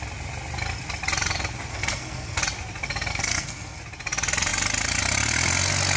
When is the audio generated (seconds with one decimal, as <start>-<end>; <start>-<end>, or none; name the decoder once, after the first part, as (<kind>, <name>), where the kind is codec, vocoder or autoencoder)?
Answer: 1.7-2.4 (codec, SNAC); 3.1-3.8